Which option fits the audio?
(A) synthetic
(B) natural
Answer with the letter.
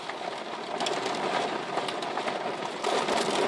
B